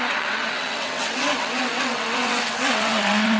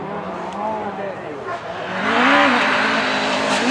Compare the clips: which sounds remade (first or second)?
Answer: first